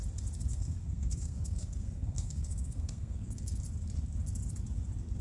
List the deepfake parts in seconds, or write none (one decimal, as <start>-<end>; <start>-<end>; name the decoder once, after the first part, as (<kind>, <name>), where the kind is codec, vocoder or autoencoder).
0.5-3.6 (codec, SNAC)